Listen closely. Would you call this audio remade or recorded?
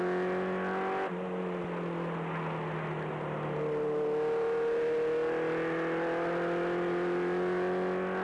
recorded